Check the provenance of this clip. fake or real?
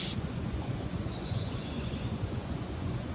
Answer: fake